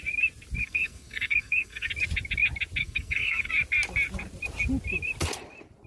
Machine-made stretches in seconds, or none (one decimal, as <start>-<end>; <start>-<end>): 0.6-1.9; 2.8-3.5